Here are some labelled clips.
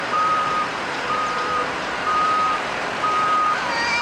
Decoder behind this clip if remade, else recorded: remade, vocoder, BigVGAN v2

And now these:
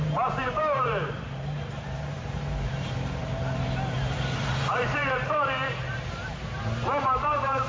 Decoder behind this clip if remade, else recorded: remade, vocoder, BigVGAN v2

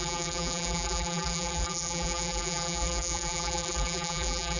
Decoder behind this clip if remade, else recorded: remade, vocoder, BigVGAN v2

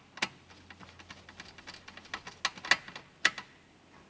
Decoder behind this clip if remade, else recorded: recorded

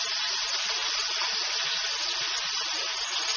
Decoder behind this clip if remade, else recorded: remade, vocoder, BigVGAN v2